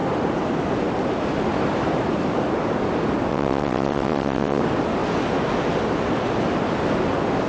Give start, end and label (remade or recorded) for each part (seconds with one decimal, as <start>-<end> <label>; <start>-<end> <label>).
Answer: 0.0-3.3 recorded; 3.3-4.6 remade; 4.6-7.5 recorded